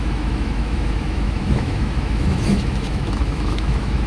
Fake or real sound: fake